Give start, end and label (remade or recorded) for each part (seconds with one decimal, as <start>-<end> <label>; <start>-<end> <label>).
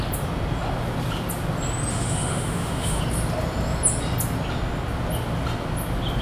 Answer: 0.0-1.9 recorded; 1.9-3.0 remade; 3.0-6.2 recorded